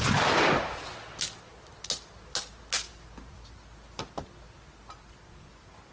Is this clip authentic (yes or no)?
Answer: yes